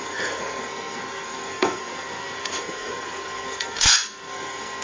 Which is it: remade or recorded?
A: remade